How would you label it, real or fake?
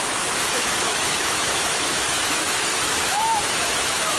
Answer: fake